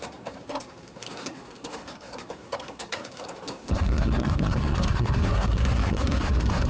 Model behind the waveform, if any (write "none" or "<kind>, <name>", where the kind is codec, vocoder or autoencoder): codec, SNAC